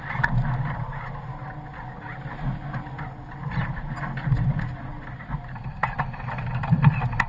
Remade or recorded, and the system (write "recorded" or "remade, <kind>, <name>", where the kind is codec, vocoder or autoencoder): recorded